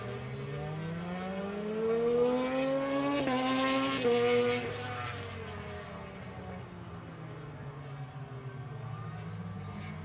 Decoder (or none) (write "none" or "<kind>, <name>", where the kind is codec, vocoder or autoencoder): none